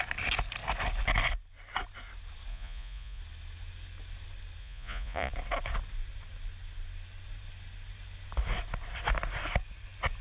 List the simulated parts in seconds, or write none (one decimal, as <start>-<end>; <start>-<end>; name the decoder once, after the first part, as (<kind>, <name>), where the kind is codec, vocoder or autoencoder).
2.5-3.2 (vocoder, Vocos); 4.6-5.3